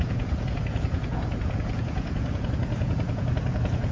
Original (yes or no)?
no